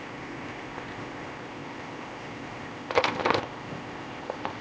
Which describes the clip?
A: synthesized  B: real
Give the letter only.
A